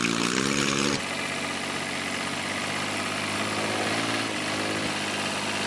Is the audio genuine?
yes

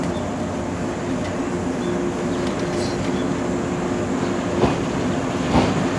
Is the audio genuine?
yes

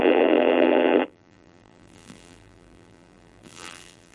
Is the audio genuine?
no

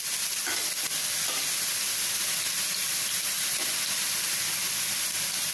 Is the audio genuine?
yes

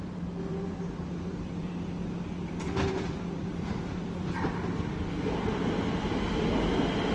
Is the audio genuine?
no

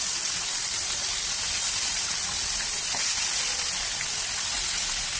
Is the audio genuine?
yes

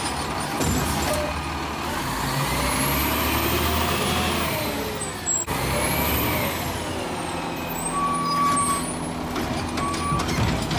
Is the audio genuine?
yes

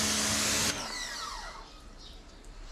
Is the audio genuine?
yes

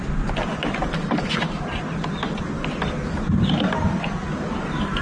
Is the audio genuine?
yes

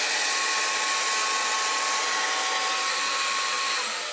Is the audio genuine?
yes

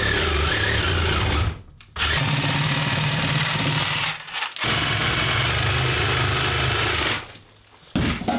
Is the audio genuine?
yes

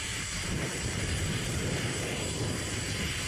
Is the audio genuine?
no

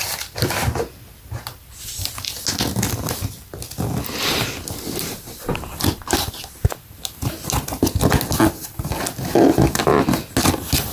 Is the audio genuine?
yes